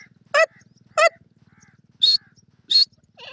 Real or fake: real